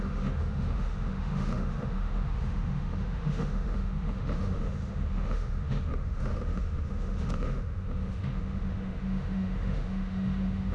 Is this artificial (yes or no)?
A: yes